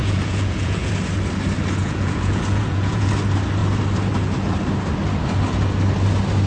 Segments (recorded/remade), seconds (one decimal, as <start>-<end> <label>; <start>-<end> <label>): 0.0-0.9 remade; 0.9-1.8 recorded; 1.8-3.1 remade; 3.1-6.5 recorded